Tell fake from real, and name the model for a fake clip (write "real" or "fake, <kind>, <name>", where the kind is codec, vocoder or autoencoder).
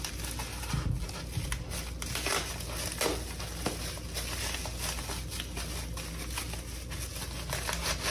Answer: real